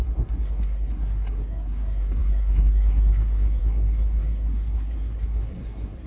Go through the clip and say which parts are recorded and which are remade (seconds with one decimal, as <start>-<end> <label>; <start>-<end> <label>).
0.0-6.1 remade